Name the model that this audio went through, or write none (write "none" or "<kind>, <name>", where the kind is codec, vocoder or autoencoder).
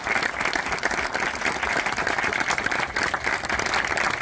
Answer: none